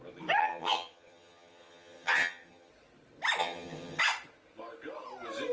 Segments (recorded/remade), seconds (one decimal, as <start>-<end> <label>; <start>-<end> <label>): 0.0-0.4 recorded; 0.4-2.7 remade; 2.7-3.4 recorded; 3.4-4.0 remade; 4.0-5.5 recorded

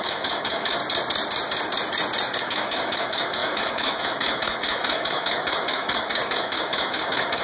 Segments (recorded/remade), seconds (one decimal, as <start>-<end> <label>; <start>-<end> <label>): 0.0-0.8 remade; 0.8-2.4 recorded; 2.4-7.4 remade

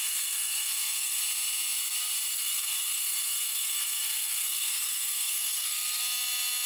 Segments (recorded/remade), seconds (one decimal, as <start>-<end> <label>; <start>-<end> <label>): 0.0-1.2 remade; 1.2-2.3 recorded; 2.3-6.0 remade; 6.0-6.7 recorded

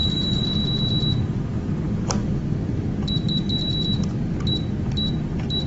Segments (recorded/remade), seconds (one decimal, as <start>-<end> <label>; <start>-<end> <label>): 0.0-0.5 remade; 0.5-5.7 recorded

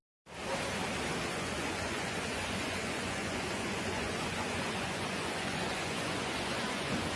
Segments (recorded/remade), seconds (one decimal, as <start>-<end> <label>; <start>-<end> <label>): 0.0-1.3 recorded; 1.3-7.2 remade